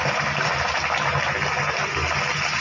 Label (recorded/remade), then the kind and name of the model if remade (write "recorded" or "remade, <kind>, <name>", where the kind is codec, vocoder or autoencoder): recorded